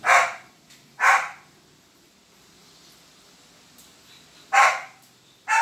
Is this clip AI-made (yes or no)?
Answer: yes